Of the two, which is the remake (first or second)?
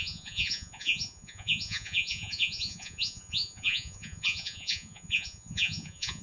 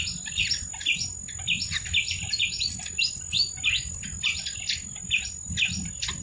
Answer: first